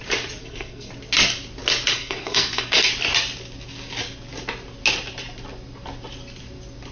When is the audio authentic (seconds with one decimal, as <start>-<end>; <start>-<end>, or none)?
0.0-0.4; 0.9-1.9; 2.9-6.9